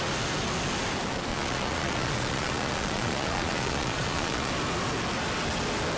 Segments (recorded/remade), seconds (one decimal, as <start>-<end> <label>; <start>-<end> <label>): 0.0-1.3 recorded; 1.3-4.5 remade; 4.5-6.0 recorded